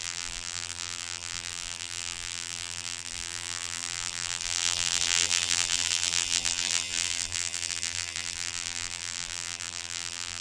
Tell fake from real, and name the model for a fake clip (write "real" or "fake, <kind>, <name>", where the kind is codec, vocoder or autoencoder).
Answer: fake, vocoder, BigVGAN v2